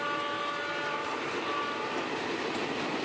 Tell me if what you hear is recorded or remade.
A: recorded